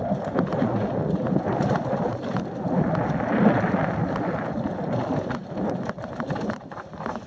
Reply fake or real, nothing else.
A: real